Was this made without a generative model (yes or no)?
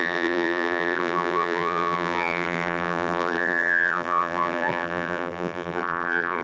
no